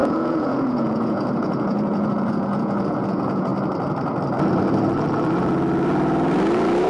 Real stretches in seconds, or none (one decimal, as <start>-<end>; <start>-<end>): 3.5-6.9